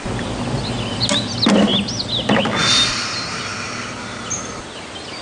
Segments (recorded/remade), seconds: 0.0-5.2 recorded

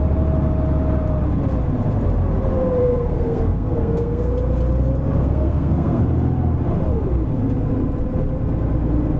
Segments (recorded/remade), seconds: 0.0-2.8 recorded; 2.8-4.3 remade; 4.3-5.2 recorded; 5.2-6.0 remade; 6.0-9.2 recorded

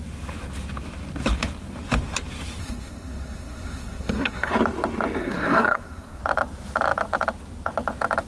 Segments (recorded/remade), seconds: 0.0-2.6 recorded; 2.6-4.5 remade; 4.5-5.2 recorded; 5.2-6.2 remade; 6.2-8.3 recorded

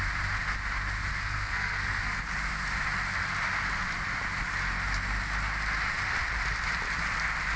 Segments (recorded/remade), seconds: 0.0-1.1 recorded; 1.1-2.2 remade; 2.2-7.6 recorded

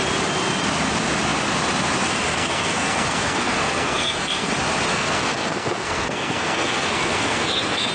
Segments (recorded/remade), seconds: 0.0-2.3 recorded; 2.3-4.5 remade; 4.5-4.9 recorded; 4.9-7.9 remade

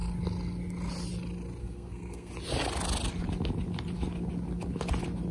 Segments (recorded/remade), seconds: 0.0-1.6 recorded; 1.6-2.3 remade; 2.3-5.3 recorded

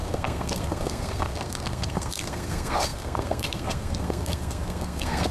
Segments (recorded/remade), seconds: 0.0-5.3 remade

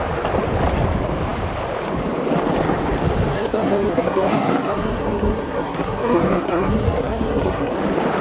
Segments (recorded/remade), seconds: 0.0-3.3 recorded; 3.3-7.7 remade; 7.7-8.2 recorded